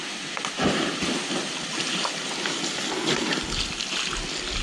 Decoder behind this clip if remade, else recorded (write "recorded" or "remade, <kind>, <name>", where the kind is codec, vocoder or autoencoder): recorded